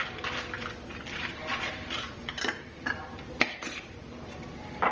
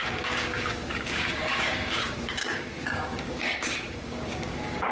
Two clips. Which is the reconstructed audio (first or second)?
second